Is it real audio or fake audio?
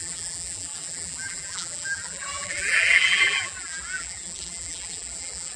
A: fake